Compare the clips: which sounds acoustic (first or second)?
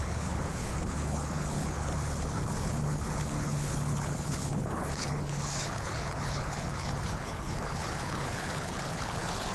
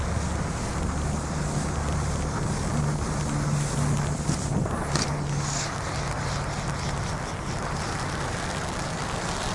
second